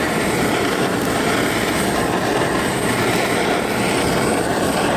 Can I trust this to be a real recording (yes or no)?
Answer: no